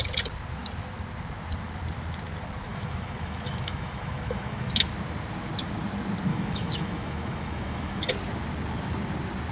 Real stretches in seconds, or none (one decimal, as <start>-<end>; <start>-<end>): 0.0-2.7; 4.9-6.3; 8.1-9.5